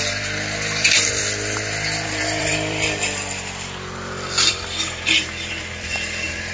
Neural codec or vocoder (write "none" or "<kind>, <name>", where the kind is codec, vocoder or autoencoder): vocoder, BigVGAN v2